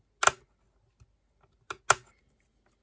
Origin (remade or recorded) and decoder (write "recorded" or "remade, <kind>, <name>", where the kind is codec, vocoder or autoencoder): recorded